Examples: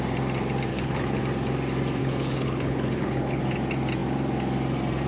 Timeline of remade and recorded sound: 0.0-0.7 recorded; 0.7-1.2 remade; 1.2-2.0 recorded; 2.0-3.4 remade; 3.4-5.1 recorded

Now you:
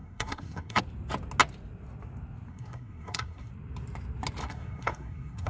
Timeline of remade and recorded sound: 0.0-0.8 remade; 0.8-2.5 recorded; 2.5-3.5 remade; 3.5-4.4 recorded; 4.4-5.5 remade